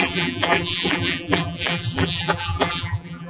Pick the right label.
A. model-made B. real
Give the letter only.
A